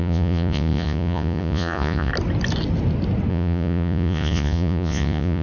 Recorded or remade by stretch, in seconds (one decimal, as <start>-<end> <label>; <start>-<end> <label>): 0.0-2.1 remade; 2.1-3.3 recorded; 3.3-5.4 remade